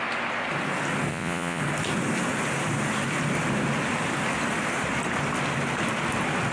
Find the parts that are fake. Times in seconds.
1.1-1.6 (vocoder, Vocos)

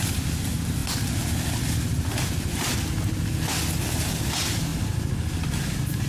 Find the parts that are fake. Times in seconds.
none

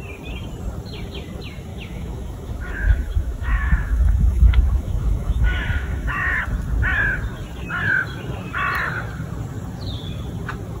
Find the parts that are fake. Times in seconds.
1.7-6.4 (autoencoder, DAC-VAE)

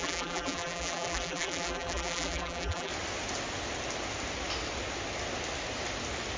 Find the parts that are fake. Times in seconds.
0.0-2.9 (vocoder, BigVGAN v2)

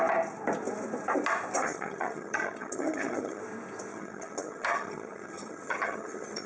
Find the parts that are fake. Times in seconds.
1.6-3.4 (vocoder, HiFi-GAN); 3.9-6.5

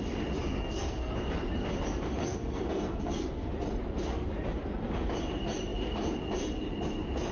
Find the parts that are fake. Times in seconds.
0.5-1.1 (codec, SNAC); 2.2-3.5

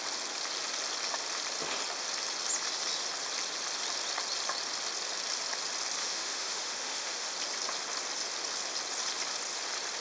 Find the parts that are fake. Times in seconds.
6.0-7.3 (autoencoder, DAC-VAE)